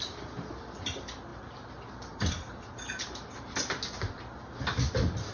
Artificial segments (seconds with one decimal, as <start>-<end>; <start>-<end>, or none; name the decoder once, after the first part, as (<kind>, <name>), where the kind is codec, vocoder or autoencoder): none